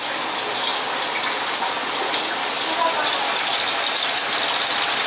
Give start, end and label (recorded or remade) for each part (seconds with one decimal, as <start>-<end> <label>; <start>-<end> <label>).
0.0-5.1 recorded